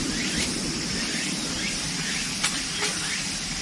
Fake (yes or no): no